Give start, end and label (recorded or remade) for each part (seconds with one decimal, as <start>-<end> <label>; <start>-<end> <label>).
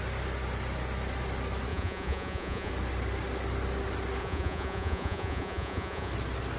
0.0-1.7 recorded; 1.7-2.7 remade; 2.7-4.2 recorded; 4.2-6.1 remade; 6.1-6.6 recorded